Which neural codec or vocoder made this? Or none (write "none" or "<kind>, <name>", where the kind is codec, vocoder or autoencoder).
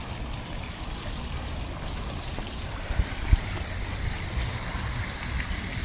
none